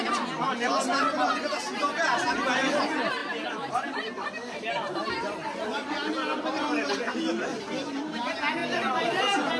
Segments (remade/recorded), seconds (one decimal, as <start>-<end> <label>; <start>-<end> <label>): 0.0-3.2 recorded; 3.2-7.6 remade; 7.6-9.6 recorded